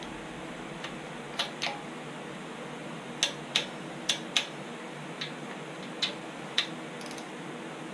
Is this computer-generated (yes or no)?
no